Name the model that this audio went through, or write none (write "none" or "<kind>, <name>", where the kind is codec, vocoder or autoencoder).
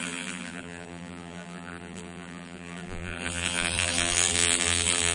vocoder, BigVGAN v2